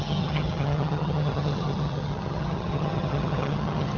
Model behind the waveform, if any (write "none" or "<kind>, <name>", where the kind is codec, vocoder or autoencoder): vocoder, HiFi-GAN